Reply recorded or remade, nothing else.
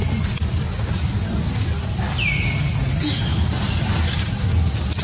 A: recorded